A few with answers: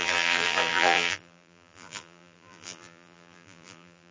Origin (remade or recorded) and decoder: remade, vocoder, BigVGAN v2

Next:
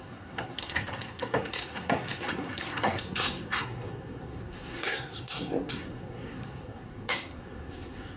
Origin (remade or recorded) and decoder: remade, codec, SNAC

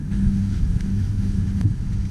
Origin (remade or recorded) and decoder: remade, autoencoder, DAC-VAE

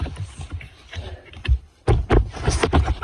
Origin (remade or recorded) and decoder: recorded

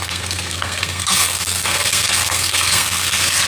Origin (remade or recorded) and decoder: remade, codec, SNAC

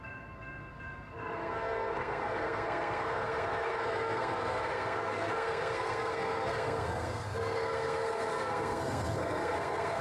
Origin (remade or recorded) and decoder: remade, codec, SNAC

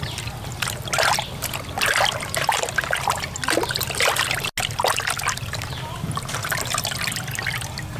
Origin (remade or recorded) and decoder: recorded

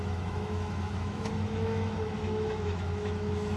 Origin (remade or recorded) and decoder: remade, autoencoder, DAC-VAE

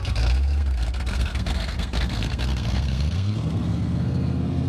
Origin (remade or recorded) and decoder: remade, codec, SNAC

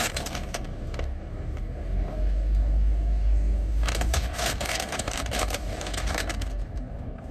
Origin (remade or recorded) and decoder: remade, codec, DAC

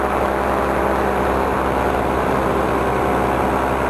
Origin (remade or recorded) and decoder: recorded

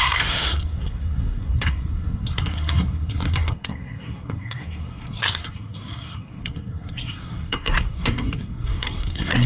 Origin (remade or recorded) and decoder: remade, codec, SNAC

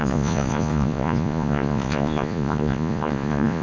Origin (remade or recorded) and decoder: remade, vocoder, Vocos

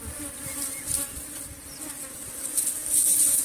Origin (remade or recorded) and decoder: recorded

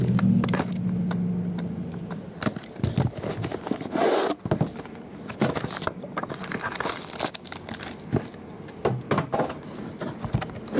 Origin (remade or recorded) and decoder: recorded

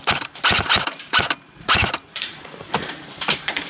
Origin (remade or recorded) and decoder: remade, vocoder, BigVGAN v2